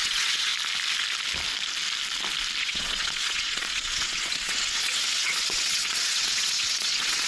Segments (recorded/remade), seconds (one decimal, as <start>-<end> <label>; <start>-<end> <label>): 0.0-0.5 remade; 0.5-2.6 recorded; 2.6-7.3 remade